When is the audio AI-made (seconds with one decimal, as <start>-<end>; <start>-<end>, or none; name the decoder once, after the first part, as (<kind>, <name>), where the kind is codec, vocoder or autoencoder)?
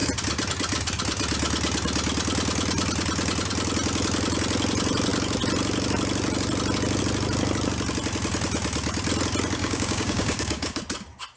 9.6-10.8 (codec, DAC)